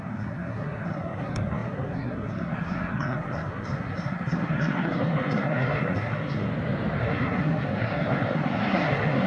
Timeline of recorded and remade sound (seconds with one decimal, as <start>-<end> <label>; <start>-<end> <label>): 0.0-6.5 remade; 6.5-7.0 recorded; 7.0-9.3 remade